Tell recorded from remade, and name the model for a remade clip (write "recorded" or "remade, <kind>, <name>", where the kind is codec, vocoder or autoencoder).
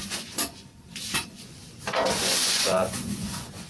remade, vocoder, Vocos